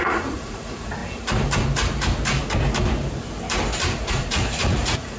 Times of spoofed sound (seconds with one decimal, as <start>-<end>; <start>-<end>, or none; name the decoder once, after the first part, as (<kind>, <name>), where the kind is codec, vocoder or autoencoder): 0.0-1.0 (vocoder, Vocos); 4.1-5.2